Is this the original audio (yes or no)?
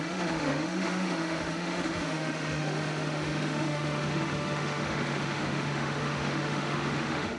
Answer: no